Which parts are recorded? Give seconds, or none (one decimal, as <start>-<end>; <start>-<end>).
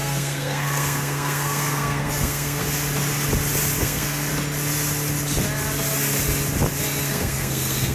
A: 2.6-3.8; 4.3-7.0